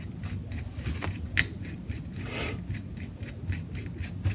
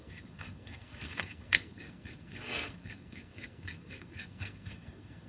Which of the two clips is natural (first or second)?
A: first